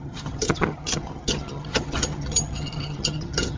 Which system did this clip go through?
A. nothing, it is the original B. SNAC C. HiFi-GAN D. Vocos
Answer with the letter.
C